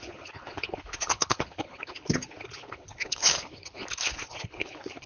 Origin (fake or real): fake